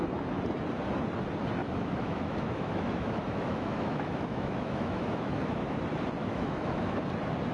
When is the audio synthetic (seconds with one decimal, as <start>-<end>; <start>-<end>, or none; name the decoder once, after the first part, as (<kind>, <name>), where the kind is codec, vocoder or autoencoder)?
1.6-5.8 (autoencoder, DAC-VAE); 6.2-7.0